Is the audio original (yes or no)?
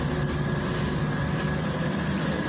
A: yes